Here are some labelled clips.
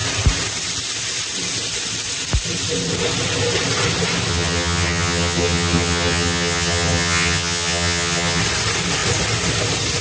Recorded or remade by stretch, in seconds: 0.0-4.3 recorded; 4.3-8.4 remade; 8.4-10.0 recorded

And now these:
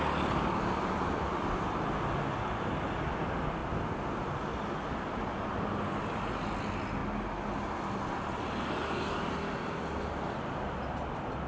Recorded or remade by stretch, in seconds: 0.0-11.5 recorded

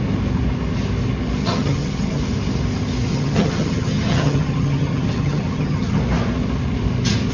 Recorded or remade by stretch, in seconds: 0.0-1.4 recorded; 1.4-2.2 remade; 2.2-3.1 recorded; 3.1-6.0 remade; 6.0-7.3 recorded